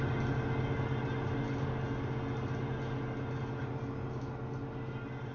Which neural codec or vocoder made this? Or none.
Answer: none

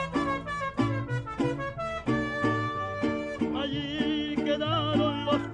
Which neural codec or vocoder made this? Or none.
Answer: none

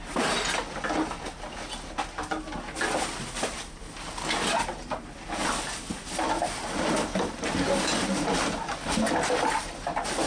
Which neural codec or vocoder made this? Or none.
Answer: none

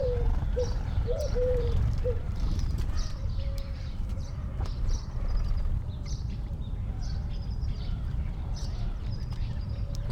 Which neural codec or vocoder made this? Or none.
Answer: vocoder, BigVGAN v2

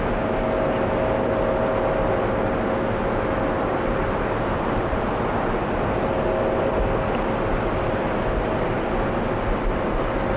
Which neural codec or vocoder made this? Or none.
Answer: none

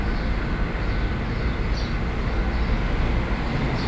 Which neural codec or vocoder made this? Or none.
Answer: none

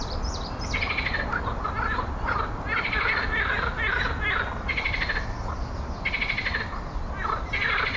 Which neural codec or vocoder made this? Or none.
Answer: vocoder, BigVGAN v2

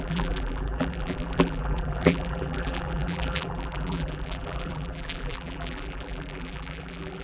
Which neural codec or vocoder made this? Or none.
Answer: vocoder, BigVGAN v2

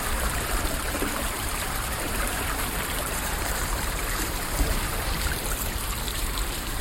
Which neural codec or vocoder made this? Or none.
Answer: vocoder, BigVGAN v2